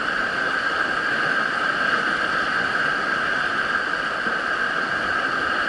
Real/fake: real